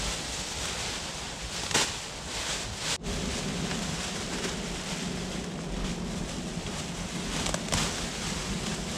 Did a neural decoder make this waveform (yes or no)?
no